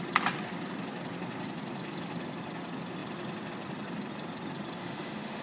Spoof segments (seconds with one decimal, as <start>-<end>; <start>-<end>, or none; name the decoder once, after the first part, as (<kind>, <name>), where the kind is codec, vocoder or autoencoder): 4.8-5.4 (autoencoder, DAC-VAE)